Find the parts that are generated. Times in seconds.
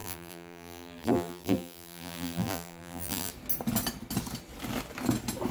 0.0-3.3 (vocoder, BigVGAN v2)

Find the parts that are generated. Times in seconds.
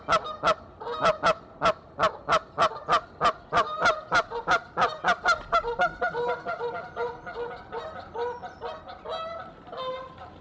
none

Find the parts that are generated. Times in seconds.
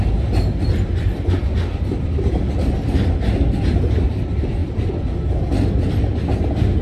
none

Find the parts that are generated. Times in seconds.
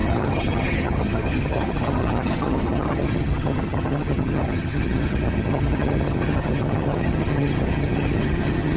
0.0-8.8 (vocoder, HiFi-GAN)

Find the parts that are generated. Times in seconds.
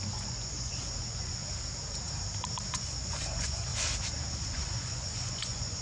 0.0-1.4 (vocoder, Vocos); 2.7-3.7; 4.4-5.8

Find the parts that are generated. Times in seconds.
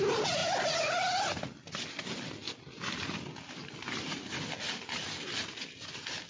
none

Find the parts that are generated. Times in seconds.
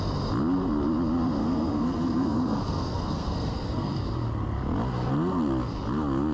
1.4-4.0 (codec, SNAC)